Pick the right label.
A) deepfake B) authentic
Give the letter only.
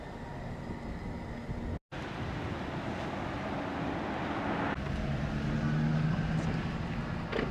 B